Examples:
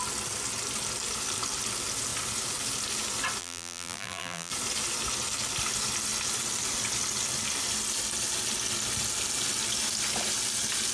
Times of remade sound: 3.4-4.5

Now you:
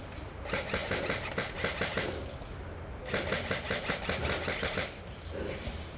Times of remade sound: none

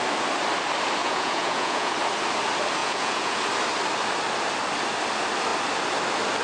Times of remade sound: 1.0-1.9; 2.8-3.4